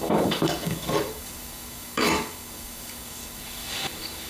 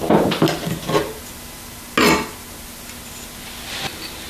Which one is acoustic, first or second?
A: second